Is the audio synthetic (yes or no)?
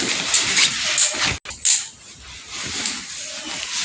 no